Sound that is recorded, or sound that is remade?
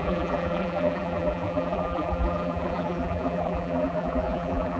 remade